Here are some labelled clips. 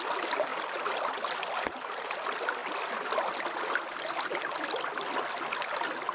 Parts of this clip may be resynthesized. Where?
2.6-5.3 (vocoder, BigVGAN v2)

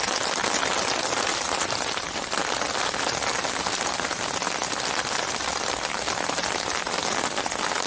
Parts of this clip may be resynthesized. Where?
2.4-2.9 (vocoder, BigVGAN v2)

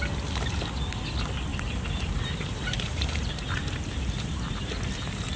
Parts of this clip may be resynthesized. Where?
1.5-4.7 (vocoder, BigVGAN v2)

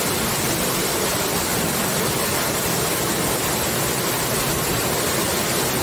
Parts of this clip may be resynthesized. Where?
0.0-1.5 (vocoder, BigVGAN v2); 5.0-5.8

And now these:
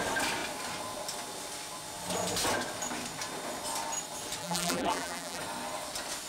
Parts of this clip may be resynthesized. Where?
4.4-5.4 (vocoder, BigVGAN v2)

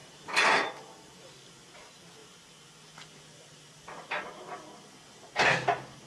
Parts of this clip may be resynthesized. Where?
0.0-0.7 (vocoder, BigVGAN v2)

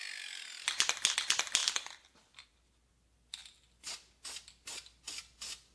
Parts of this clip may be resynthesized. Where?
1.6-2.5 (vocoder, BigVGAN v2)

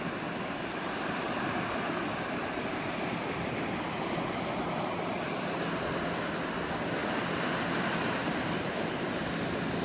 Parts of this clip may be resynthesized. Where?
none